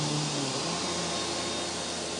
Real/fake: real